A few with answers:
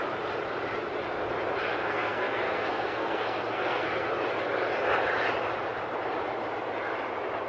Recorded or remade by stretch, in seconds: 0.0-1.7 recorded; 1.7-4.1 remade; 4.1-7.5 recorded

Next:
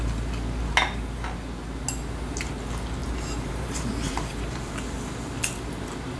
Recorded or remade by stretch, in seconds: 0.0-3.0 recorded; 3.0-4.7 remade; 4.7-6.2 recorded

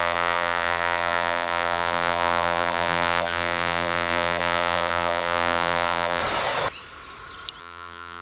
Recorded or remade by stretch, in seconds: 0.0-6.2 remade; 6.2-7.6 recorded; 7.6-8.2 remade

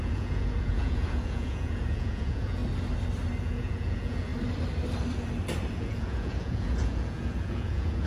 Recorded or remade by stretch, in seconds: 0.0-2.6 remade; 2.6-3.4 recorded; 3.4-4.3 remade; 4.3-5.7 recorded; 5.7-8.1 remade

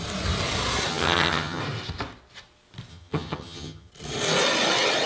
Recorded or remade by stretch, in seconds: 0.0-0.9 recorded; 0.9-1.6 remade; 1.6-2.9 recorded; 2.9-3.9 remade; 3.9-5.1 recorded

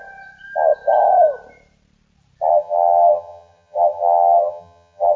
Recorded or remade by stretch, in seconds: 0.0-2.5 recorded; 2.5-5.2 remade